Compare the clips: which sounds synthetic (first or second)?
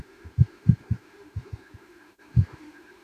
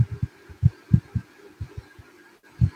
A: first